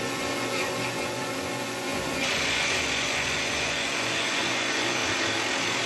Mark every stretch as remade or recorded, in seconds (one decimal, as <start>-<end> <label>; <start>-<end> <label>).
0.0-5.0 remade; 5.0-5.9 recorded